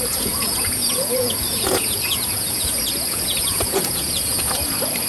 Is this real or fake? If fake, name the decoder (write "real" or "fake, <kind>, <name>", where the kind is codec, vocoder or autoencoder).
fake, vocoder, Vocos